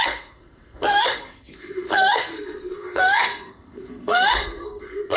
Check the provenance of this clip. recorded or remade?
remade